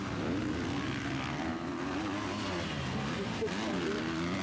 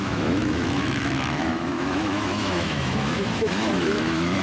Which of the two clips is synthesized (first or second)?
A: second